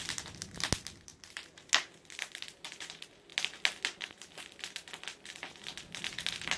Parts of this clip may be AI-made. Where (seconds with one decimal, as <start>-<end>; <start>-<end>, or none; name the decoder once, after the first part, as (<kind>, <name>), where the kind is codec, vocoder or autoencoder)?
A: 1.1-1.7 (vocoder, BigVGAN v2)